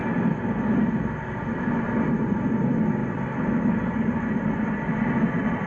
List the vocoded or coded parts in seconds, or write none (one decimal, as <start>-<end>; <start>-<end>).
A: none